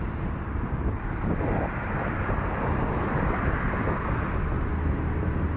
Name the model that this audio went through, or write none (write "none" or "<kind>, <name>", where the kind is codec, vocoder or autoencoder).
none